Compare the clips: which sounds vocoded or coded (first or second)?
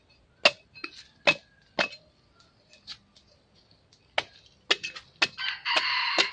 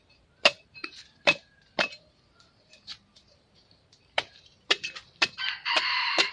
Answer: second